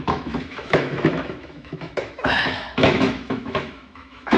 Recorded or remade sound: remade